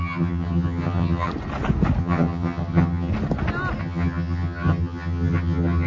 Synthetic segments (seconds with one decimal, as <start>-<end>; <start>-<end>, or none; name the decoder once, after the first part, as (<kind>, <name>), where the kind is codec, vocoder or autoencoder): 0.0-1.3 (vocoder, HiFi-GAN); 2.0-3.1; 3.8-5.9